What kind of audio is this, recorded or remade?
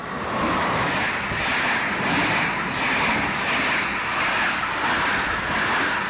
recorded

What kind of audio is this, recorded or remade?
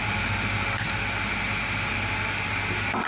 recorded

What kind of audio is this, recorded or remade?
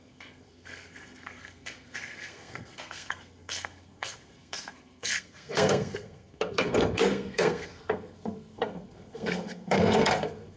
remade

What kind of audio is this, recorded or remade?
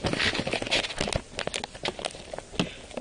recorded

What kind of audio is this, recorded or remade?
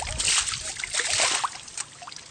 recorded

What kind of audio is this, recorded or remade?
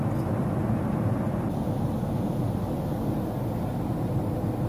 recorded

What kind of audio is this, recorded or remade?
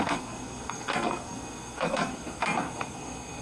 remade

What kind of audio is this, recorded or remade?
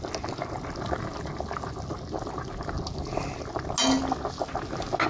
recorded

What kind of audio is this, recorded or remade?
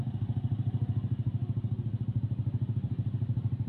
recorded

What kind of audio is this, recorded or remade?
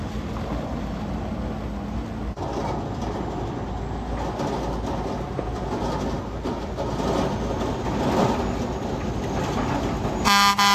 recorded